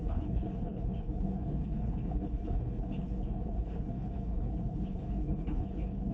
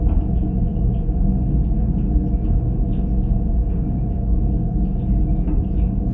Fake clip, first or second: first